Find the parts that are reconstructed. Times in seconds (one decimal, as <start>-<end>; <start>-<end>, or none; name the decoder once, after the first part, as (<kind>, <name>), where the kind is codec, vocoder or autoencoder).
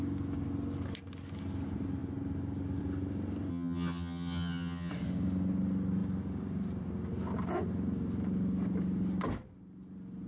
3.5-4.9 (vocoder, HiFi-GAN)